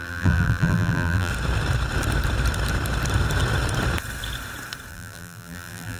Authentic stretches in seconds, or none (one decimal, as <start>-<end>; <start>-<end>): 1.3-4.9